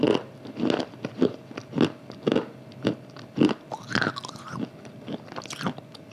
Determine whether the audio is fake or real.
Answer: real